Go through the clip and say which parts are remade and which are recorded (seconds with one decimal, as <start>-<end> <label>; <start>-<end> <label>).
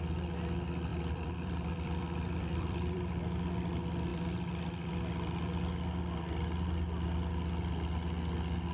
0.0-0.9 recorded; 0.9-3.2 remade; 3.2-4.1 recorded; 4.1-4.9 remade; 4.9-8.7 recorded